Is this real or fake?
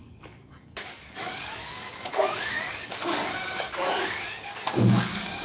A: fake